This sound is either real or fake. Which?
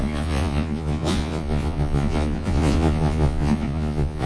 fake